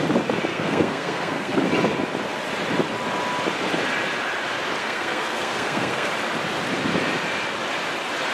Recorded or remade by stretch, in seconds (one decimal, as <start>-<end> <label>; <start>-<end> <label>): 0.0-0.5 recorded; 0.5-1.7 remade; 1.7-4.8 recorded; 4.8-6.1 remade; 6.1-8.3 recorded